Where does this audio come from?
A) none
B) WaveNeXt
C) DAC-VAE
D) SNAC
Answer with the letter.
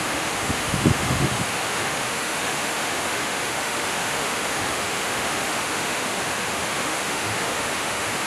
C